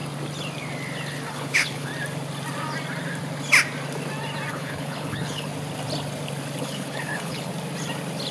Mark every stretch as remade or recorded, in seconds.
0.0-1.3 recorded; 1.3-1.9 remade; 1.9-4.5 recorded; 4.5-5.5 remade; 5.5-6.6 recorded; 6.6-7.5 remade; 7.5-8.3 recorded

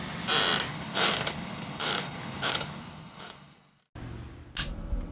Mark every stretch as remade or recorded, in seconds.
0.0-0.7 recorded; 0.7-3.8 remade; 3.8-5.1 recorded

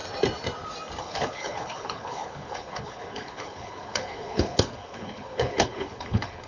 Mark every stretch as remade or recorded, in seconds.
0.0-1.0 recorded; 1.0-6.5 remade